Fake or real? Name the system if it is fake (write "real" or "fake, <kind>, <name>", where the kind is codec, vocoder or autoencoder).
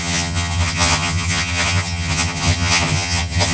fake, vocoder, HiFi-GAN